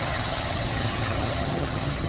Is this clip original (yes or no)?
no